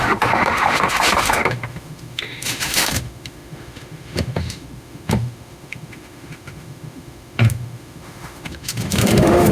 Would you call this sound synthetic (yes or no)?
yes